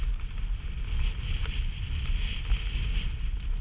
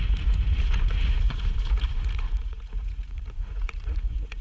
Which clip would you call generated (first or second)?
second